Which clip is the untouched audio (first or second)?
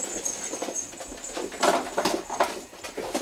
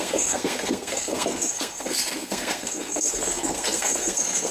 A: first